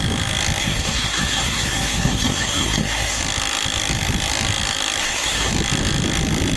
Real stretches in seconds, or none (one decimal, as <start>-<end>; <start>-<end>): 0.0-0.6; 3.2-5.0; 5.5-6.6